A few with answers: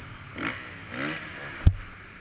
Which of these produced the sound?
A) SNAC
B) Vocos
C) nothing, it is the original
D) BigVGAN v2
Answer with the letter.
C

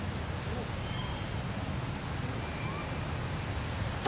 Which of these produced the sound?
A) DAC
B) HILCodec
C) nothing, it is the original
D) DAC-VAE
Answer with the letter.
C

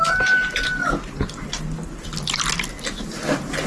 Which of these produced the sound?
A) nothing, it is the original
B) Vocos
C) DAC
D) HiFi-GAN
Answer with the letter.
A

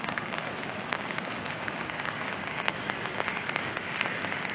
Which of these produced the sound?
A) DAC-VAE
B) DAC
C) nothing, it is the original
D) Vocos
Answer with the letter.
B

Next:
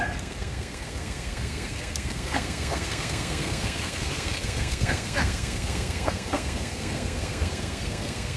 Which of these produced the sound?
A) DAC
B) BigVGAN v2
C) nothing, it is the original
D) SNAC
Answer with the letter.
D